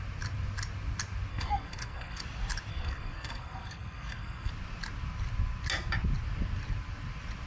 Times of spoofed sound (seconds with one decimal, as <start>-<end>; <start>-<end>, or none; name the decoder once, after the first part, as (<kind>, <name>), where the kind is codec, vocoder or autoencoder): 1.3-2.2 (codec, SNAC); 2.7-4.5